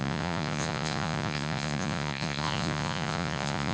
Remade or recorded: remade